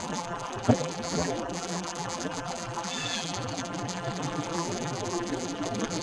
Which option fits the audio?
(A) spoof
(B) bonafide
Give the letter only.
A